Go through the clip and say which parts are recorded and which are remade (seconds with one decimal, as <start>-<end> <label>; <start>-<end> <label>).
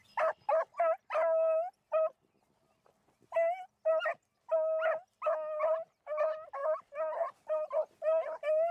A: 0.0-8.7 recorded